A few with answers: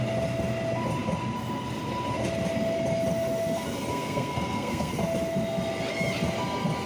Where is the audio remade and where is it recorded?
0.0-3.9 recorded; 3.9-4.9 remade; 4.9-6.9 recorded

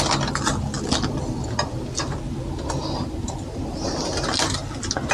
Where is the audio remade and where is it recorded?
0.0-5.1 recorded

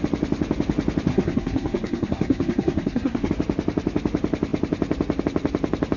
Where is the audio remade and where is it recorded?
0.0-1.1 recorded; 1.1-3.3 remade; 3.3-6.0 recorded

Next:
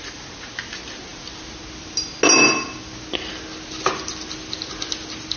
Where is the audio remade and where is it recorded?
0.0-5.4 recorded

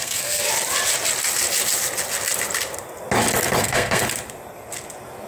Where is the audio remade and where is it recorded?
0.0-0.4 remade; 0.4-3.6 recorded; 3.6-4.0 remade; 4.0-5.3 recorded

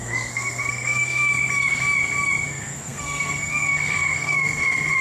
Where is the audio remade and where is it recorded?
0.0-1.3 remade; 1.3-2.5 recorded; 2.5-5.0 remade

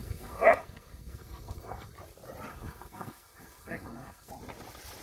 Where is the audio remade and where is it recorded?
0.0-1.9 remade; 1.9-2.5 recorded; 2.5-4.3 remade; 4.3-5.0 recorded